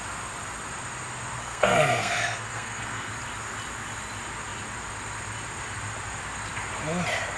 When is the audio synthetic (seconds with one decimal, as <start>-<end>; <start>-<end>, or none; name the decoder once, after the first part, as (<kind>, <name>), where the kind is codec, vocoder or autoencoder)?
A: 1.4-3.1 (codec, SNAC)